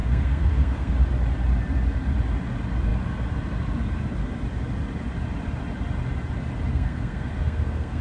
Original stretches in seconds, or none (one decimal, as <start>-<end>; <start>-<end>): 0.9-6.7